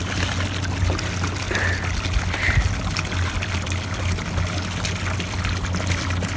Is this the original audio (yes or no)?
yes